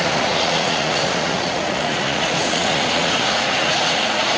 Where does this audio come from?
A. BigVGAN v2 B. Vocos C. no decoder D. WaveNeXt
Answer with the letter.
B